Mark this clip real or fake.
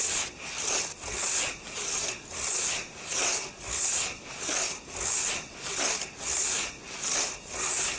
real